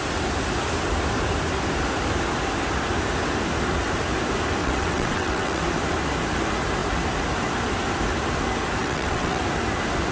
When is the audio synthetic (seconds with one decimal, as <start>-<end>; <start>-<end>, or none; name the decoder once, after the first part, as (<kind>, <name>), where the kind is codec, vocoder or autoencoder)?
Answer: 4.6-5.6 (vocoder, WaveNeXt); 8.8-9.4